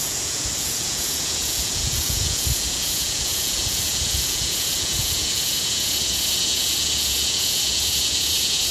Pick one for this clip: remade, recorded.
remade